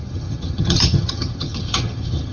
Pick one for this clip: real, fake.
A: fake